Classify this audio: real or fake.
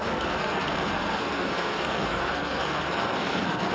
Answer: fake